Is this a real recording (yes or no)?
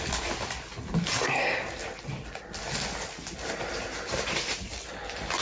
yes